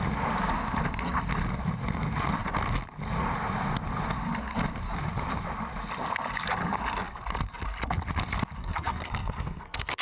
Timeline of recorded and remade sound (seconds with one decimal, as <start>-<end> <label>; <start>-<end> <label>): 0.0-8.6 recorded; 8.6-10.0 remade